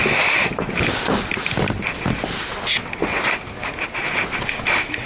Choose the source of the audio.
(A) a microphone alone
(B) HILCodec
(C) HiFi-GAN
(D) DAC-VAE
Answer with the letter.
A